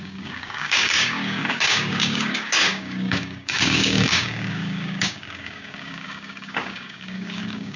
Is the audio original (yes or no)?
no